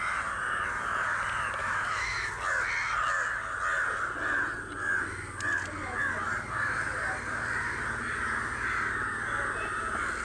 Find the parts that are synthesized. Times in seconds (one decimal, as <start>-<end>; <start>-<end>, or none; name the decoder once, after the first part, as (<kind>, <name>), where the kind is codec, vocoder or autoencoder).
1.6-2.3 (autoencoder, DAC-VAE)